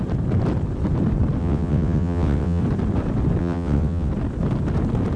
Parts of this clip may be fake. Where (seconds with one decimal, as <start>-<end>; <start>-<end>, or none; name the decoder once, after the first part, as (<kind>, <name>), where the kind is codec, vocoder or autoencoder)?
1.4-2.6 (vocoder, WaveNeXt); 3.4-4.1